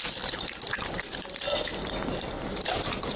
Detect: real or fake fake